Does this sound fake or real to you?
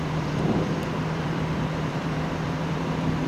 fake